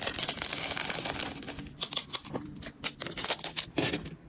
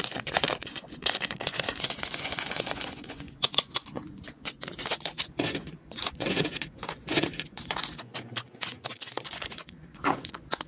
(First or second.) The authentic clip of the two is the first